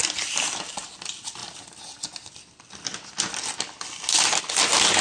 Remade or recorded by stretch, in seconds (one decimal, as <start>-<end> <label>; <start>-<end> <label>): 0.0-5.0 recorded